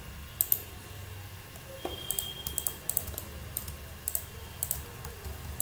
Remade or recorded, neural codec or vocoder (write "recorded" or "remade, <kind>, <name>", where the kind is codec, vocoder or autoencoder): recorded